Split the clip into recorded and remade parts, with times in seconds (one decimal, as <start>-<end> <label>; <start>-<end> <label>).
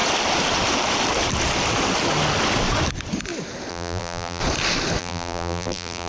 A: 0.0-3.7 recorded; 3.7-4.4 remade; 4.4-5.0 recorded; 5.0-6.1 remade